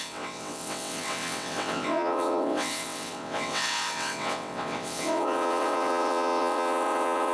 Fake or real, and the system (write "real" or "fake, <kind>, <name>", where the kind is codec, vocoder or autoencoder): fake, vocoder, WaveNeXt